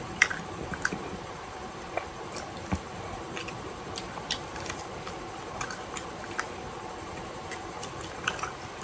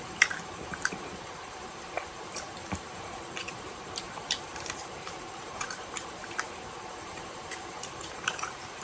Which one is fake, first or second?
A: second